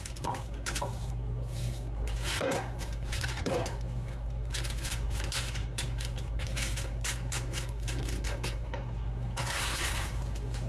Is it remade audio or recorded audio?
remade